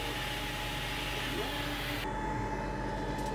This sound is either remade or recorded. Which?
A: recorded